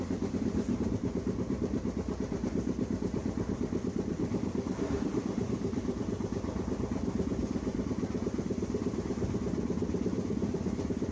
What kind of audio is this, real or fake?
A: fake